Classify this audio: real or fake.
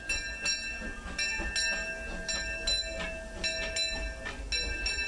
real